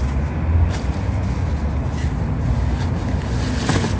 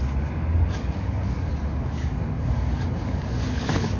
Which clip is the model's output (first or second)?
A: second